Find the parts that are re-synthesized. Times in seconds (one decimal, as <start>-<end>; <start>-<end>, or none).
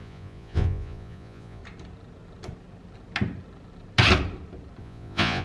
0.0-1.6; 4.8-5.4